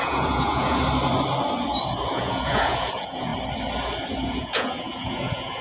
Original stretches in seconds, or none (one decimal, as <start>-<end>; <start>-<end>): 0.8-2.1; 3.3-4.1